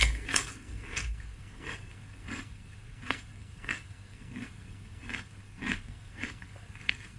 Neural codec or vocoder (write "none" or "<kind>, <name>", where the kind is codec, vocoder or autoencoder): codec, SNAC